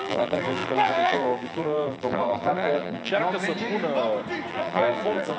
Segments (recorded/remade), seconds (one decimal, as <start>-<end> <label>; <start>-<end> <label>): 0.0-3.1 remade; 3.1-4.5 recorded; 4.5-5.4 remade